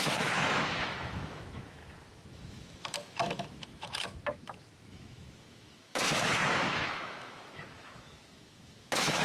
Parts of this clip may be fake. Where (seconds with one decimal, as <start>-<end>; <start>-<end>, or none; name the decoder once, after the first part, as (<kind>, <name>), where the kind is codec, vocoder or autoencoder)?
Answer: 0.0-9.2 (autoencoder, DAC-VAE)